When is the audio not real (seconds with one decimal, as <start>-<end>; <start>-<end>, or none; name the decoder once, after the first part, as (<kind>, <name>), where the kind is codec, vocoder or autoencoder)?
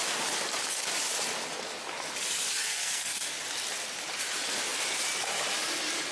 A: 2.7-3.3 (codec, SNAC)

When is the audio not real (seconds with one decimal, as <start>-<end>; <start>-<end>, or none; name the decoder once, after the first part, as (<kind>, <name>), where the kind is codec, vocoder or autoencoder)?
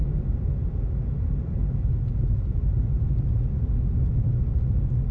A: none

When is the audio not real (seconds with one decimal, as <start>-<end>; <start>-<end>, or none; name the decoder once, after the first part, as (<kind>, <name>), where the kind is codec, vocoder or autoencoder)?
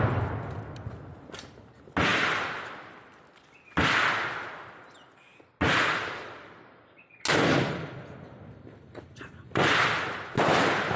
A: none